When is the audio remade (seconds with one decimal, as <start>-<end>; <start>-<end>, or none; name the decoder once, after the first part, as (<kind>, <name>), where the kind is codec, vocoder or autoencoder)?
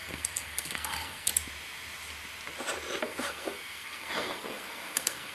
0.0-1.3 (codec, SNAC); 3.0-5.3